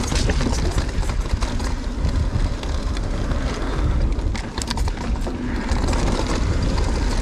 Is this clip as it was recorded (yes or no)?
yes